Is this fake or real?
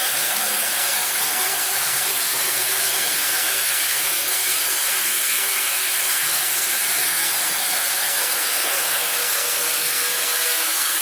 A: fake